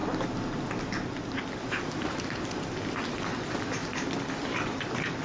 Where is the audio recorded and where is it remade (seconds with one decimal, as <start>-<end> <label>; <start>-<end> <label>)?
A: 0.0-3.8 recorded; 3.8-4.8 remade; 4.8-5.2 recorded